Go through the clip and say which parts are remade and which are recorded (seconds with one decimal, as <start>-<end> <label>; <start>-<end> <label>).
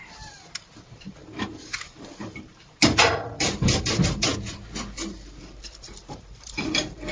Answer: 0.0-4.3 remade; 4.3-5.1 recorded; 5.1-7.1 remade